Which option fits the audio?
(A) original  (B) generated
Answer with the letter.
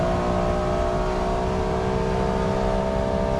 A